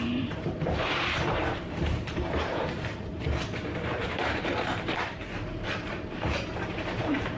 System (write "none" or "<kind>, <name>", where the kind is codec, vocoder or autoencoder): vocoder, BigVGAN v2